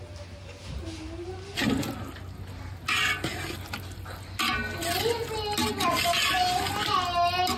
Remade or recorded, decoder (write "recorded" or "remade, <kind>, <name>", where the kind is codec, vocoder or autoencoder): recorded